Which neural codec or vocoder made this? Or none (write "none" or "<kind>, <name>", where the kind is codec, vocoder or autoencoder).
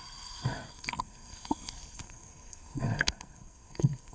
codec, SNAC